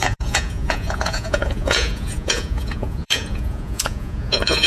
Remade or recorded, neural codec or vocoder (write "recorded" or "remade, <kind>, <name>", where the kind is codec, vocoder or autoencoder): remade, vocoder, Vocos